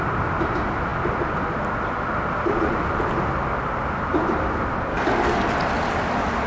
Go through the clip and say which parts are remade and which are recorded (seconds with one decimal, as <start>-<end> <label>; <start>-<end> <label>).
0.0-4.9 recorded; 4.9-5.5 remade; 5.5-6.5 recorded